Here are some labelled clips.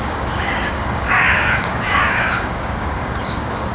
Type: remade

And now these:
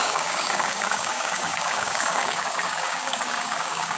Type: remade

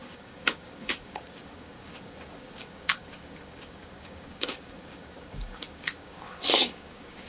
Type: remade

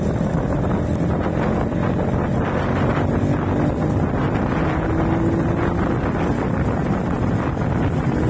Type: recorded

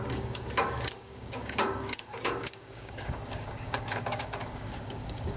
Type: remade